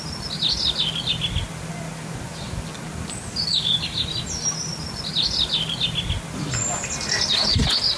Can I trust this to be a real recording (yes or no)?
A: yes